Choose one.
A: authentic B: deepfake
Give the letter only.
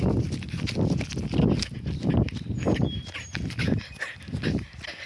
A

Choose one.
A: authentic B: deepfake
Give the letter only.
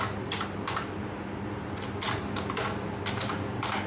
A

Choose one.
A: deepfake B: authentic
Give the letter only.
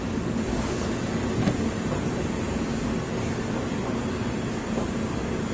B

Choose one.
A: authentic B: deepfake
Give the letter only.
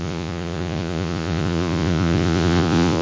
B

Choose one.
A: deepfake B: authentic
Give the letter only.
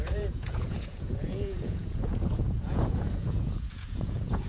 A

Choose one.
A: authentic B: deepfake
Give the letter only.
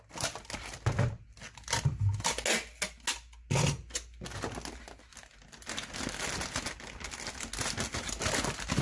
A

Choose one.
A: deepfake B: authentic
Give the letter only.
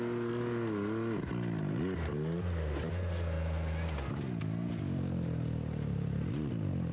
B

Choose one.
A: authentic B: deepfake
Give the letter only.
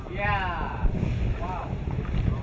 A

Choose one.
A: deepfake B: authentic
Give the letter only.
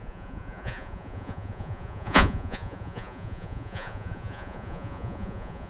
A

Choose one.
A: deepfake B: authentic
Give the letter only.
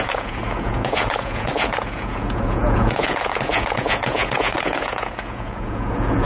A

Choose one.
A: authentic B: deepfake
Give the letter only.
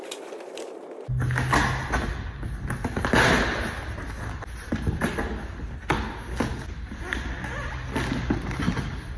A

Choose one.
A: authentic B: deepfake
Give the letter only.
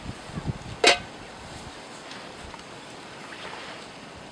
A